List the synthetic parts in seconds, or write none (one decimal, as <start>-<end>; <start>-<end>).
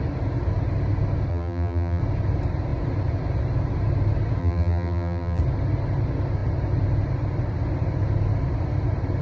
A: 1.3-2.0; 4.4-5.4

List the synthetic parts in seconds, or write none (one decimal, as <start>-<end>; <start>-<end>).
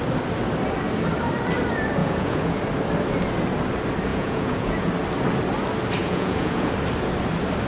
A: 2.0-2.6; 4.1-4.9; 6.0-6.7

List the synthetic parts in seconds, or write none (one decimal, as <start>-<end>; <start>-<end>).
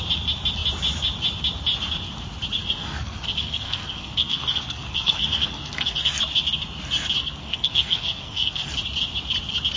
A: 2.6-6.2; 7.2-8.7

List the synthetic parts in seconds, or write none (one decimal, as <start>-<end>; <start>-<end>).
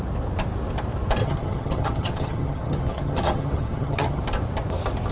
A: 1.2-4.2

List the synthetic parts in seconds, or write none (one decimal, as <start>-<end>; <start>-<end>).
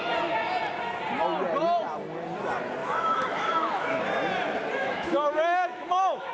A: 2.8-4.0; 4.8-6.3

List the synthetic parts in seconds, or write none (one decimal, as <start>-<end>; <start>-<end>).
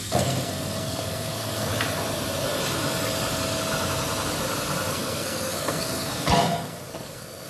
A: 0.0-1.7; 4.9-7.5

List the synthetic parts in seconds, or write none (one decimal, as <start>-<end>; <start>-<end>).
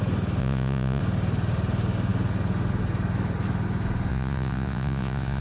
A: 0.4-1.0; 4.1-5.4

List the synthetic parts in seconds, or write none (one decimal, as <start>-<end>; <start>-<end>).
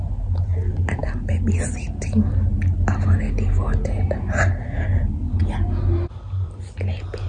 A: none